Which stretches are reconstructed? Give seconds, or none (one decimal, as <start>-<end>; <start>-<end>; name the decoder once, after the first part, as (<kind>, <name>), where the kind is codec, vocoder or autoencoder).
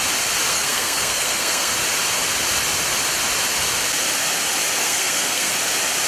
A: 0.5-1.7 (codec, SNAC); 4.8-5.5